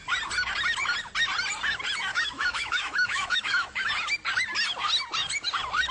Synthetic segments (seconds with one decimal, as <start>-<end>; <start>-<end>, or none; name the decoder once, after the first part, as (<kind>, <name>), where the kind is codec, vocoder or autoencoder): 2.1-3.9 (autoencoder, DAC-VAE)